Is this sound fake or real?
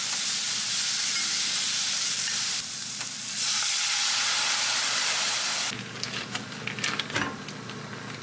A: real